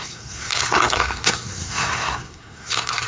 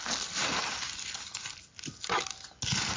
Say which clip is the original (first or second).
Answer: second